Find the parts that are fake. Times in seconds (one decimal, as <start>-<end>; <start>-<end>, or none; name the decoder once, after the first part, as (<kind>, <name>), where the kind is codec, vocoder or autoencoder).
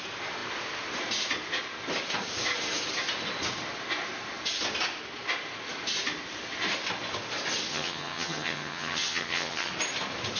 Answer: 7.7-9.7 (vocoder, HiFi-GAN)